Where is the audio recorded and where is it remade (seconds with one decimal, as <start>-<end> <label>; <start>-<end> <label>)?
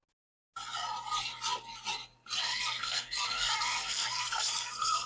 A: 0.0-2.4 recorded; 2.4-5.1 remade